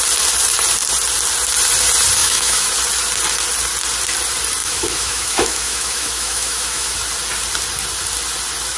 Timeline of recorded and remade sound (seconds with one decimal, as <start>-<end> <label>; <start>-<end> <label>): 0.0-2.2 recorded; 2.2-2.7 remade; 2.7-4.6 recorded; 4.6-6.9 remade; 6.9-8.8 recorded